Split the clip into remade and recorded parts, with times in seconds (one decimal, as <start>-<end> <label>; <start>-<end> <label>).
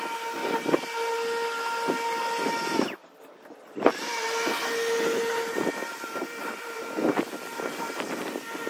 0.0-3.0 recorded; 3.0-4.5 remade; 4.5-5.8 recorded; 5.8-6.8 remade; 6.8-8.7 recorded